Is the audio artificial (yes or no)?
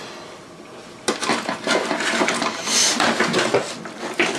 no